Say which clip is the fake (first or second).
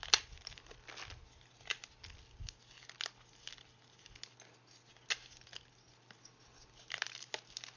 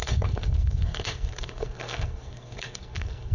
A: second